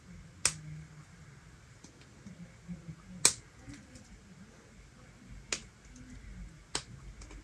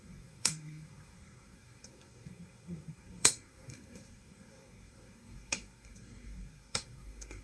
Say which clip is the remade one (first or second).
second